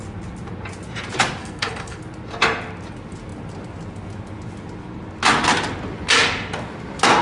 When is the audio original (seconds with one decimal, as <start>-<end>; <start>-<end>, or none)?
0.0-1.4; 2.0-7.2